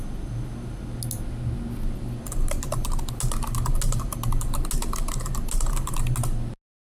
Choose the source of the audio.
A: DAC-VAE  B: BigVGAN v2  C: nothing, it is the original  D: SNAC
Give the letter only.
C